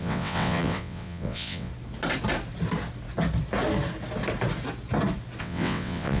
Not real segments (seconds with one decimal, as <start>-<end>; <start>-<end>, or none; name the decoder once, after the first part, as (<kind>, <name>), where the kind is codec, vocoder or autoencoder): 0.0-1.7 (vocoder, WaveNeXt); 5.4-6.2